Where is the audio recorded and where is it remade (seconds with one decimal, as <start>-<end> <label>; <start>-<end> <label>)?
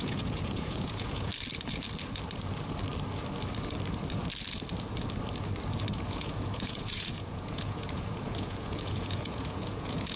0.0-1.3 remade; 1.3-5.9 recorded; 5.9-10.2 remade